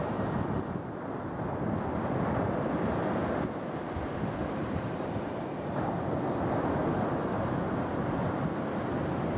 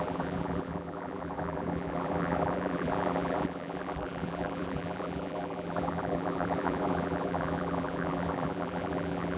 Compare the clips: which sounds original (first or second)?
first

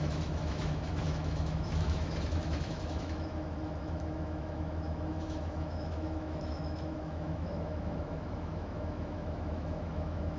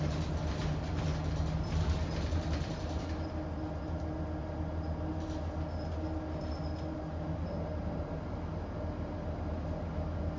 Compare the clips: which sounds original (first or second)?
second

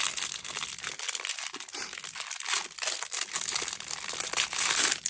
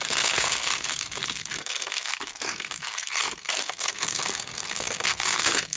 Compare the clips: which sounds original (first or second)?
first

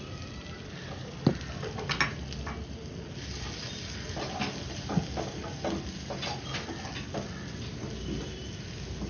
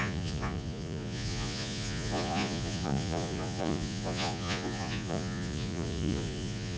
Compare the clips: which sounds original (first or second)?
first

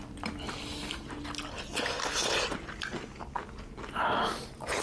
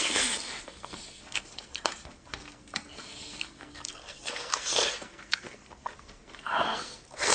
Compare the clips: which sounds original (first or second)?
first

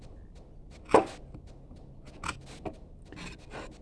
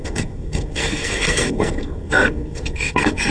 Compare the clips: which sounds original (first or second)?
first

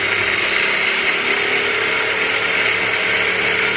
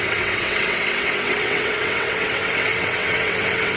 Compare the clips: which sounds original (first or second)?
first